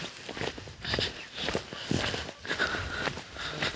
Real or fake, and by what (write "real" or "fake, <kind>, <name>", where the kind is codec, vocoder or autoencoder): real